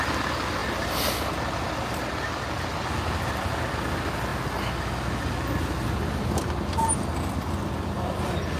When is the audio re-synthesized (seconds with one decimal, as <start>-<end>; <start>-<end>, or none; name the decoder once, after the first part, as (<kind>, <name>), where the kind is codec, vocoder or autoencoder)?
none